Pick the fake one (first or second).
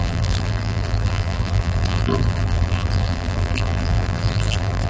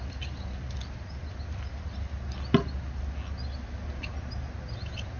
first